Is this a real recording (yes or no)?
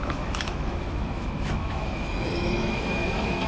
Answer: no